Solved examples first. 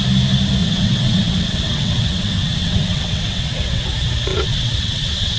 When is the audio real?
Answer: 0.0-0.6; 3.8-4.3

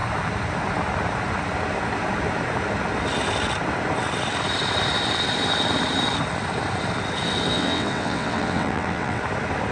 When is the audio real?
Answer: 0.0-7.5; 9.2-9.7

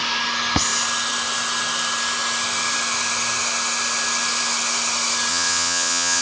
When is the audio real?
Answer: 0.0-5.3

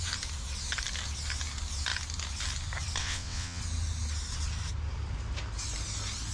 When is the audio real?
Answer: 0.0-3.0; 3.6-6.3